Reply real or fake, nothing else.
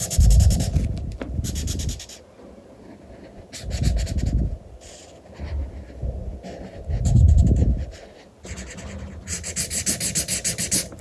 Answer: real